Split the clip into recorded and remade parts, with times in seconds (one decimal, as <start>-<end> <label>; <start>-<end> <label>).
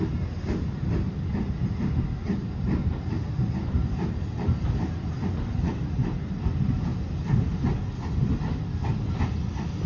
0.0-9.9 recorded